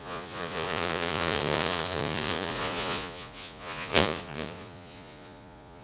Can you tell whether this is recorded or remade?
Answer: remade